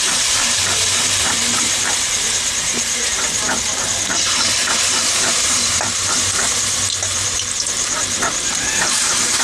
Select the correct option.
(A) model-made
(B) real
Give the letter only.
A